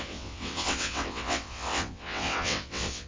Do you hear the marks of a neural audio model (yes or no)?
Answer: yes